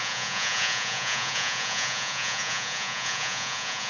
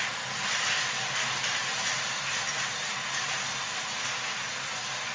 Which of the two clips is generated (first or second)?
first